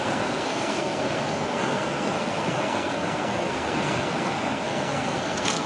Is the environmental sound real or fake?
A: fake